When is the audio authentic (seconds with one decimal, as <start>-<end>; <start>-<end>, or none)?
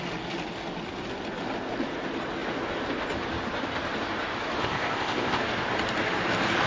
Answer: 0.0-4.6; 5.4-6.7